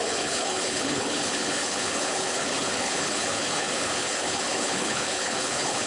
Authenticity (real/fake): fake